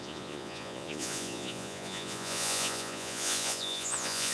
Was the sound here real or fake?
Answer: fake